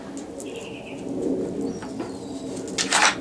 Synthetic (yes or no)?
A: no